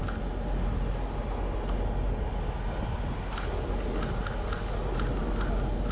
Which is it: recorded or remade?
recorded